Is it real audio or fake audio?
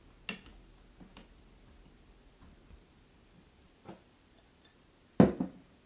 real